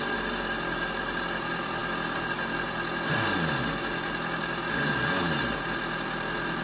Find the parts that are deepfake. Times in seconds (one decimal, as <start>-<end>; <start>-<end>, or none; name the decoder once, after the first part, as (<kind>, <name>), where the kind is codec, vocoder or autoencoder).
none